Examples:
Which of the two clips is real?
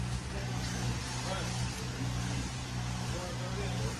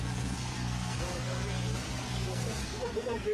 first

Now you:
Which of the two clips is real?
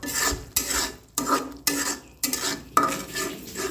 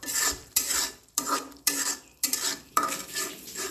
first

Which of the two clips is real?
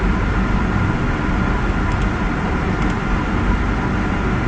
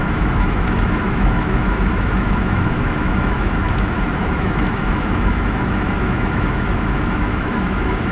first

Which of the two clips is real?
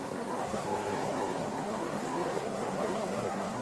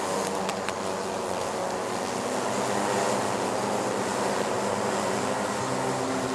second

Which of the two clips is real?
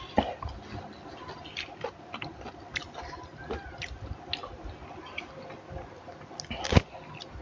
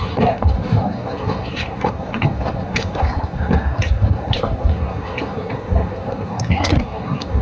first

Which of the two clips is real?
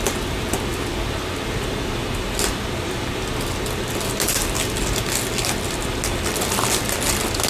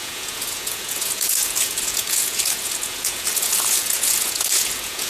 first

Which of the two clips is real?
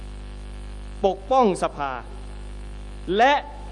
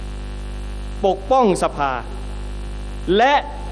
second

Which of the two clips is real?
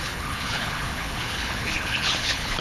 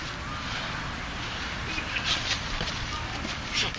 second